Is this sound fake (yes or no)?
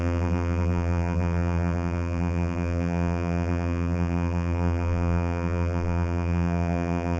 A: yes